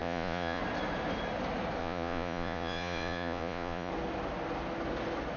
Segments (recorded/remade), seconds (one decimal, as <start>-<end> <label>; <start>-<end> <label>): 0.0-0.6 remade; 0.6-1.8 recorded; 1.8-3.9 remade; 3.9-5.4 recorded